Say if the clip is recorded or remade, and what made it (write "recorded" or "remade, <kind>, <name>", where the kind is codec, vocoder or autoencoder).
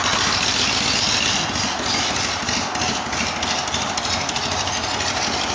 recorded